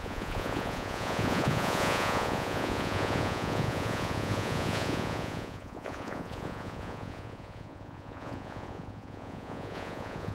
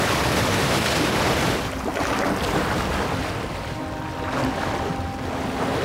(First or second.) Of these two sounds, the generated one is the first